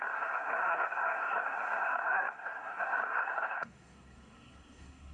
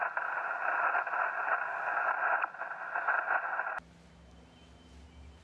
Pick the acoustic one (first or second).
second